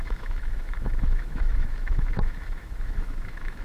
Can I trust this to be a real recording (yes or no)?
no